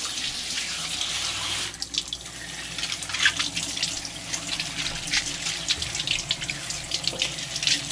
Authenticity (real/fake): real